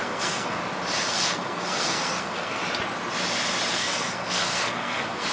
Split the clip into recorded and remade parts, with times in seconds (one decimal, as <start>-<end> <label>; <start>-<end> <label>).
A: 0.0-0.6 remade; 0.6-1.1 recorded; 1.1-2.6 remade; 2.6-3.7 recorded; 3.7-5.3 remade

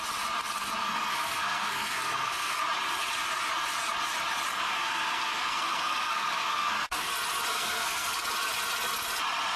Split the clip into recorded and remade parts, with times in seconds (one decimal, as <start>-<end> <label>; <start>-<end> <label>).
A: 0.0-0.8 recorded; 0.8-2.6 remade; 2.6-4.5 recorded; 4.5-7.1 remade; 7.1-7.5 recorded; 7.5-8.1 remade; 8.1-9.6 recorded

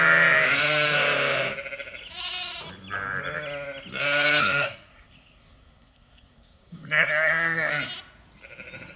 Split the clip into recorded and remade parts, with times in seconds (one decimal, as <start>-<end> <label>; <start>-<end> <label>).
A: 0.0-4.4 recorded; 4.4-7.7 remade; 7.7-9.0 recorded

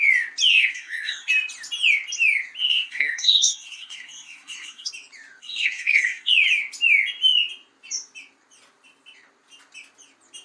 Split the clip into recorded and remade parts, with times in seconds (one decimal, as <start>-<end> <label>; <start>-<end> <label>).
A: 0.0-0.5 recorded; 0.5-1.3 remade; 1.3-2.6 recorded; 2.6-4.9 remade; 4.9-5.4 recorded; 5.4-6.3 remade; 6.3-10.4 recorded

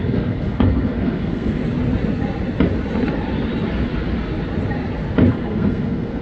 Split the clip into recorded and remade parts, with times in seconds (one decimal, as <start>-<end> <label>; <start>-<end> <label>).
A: 0.0-1.6 remade; 1.6-5.3 recorded; 5.3-6.2 remade